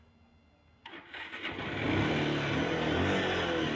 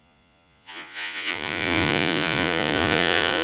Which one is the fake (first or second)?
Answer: second